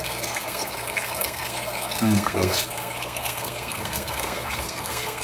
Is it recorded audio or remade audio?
remade